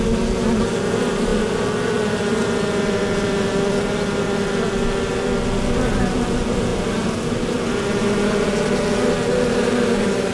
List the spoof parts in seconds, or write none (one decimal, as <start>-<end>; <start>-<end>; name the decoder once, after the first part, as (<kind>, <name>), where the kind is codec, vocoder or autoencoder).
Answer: none